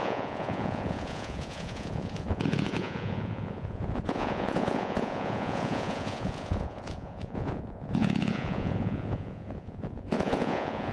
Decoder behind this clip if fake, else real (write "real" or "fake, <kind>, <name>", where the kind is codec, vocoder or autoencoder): fake, vocoder, Vocos